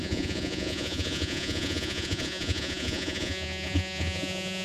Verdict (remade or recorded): remade